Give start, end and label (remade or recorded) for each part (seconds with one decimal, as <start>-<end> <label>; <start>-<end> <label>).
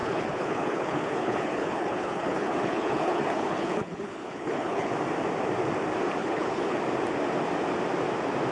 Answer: 0.0-4.9 remade; 4.9-6.2 recorded; 6.2-6.8 remade; 6.8-8.5 recorded